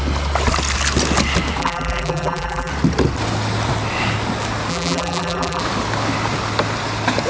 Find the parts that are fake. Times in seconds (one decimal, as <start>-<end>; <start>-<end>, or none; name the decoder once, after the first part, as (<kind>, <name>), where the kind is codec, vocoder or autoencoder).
1.6-2.7 (vocoder, BigVGAN v2); 4.7-5.6